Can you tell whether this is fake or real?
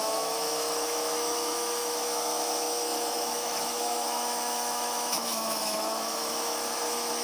fake